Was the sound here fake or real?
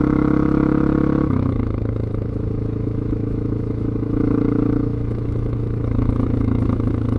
fake